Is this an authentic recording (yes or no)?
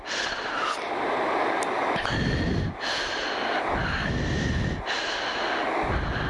yes